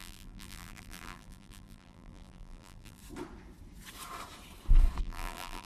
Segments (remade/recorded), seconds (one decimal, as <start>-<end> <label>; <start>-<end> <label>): 0.0-3.0 remade; 3.0-5.0 recorded; 5.0-5.7 remade